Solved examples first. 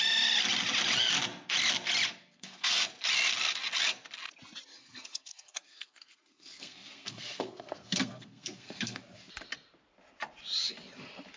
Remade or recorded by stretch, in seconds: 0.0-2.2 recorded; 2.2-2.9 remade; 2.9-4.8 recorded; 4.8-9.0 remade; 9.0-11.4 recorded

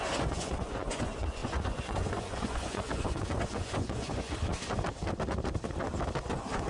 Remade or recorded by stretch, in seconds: 0.0-4.5 remade; 4.5-6.2 recorded; 6.2-6.7 remade

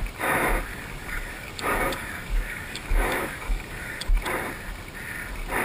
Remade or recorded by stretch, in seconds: 0.0-0.7 recorded; 0.7-4.1 remade; 4.1-5.6 recorded

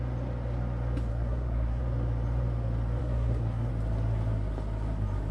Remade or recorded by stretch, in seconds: 0.0-1.1 recorded; 1.1-1.8 remade; 1.8-3.0 recorded; 3.0-3.7 remade; 3.7-5.3 recorded

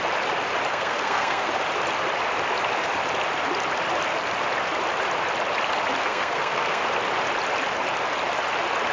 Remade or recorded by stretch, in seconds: 0.0-0.7 recorded; 0.7-1.5 remade; 1.5-6.0 recorded; 6.0-6.8 remade; 6.8-8.9 recorded

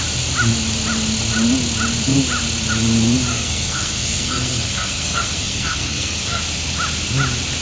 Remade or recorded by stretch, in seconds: 0.0-3.3 recorded; 3.3-6.4 remade; 6.4-7.6 recorded

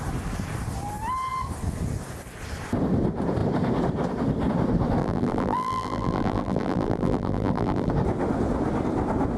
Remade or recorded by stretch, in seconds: 0.0-5.0 recorded; 5.0-7.9 remade; 7.9-9.4 recorded

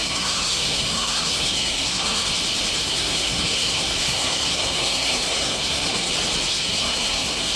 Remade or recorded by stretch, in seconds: 0.0-2.3 remade; 2.3-2.8 recorded; 2.8-6.1 remade; 6.1-6.5 recorded; 6.5-7.6 remade